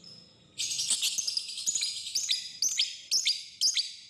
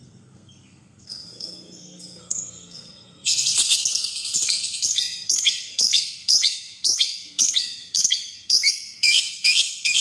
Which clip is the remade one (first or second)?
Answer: second